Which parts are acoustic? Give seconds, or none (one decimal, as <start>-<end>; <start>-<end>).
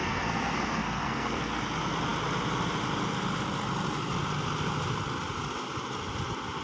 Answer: 1.6-6.6